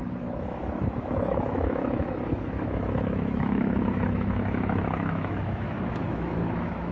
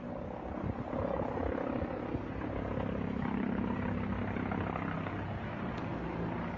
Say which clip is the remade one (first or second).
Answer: first